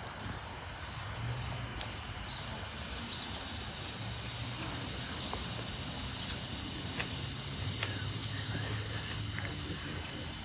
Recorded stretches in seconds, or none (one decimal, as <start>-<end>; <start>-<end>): 0.0-10.4